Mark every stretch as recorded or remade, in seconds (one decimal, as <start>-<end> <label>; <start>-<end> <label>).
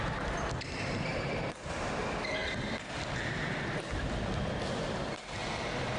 0.0-1.1 recorded; 1.1-1.9 remade; 1.9-6.0 recorded